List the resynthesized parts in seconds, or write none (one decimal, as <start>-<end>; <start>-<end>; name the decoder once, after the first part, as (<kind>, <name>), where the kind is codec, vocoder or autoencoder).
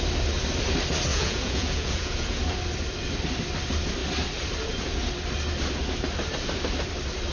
1.1-2.4 (vocoder, Vocos)